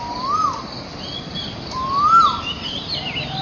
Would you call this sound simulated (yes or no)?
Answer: no